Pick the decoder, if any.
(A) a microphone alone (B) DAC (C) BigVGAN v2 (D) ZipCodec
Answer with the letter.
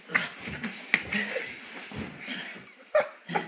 A